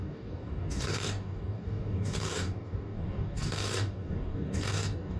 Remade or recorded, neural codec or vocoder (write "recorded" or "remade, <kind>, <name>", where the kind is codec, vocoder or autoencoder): remade, codec, DAC